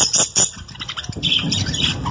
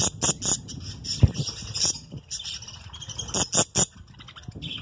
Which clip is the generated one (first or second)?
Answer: first